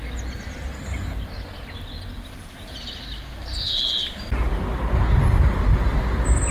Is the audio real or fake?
real